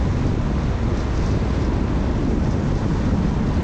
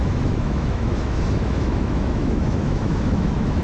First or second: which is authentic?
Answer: first